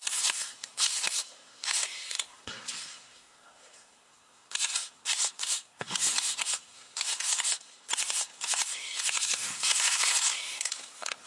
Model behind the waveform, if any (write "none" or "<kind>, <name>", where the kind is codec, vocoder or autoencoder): codec, SNAC